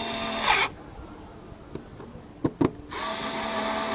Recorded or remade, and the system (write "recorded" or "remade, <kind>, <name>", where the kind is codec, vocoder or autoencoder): recorded